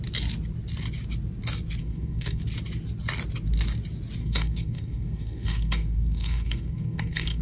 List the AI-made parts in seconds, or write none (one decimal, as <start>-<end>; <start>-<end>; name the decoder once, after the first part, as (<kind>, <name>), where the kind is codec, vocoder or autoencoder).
1.8-2.4 (codec, SNAC); 4.2-7.4